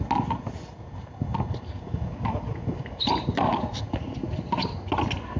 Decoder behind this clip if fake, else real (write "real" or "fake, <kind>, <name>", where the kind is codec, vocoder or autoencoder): real